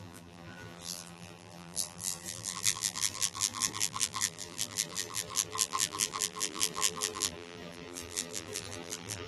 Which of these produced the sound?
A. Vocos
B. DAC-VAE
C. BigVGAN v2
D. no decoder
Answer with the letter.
C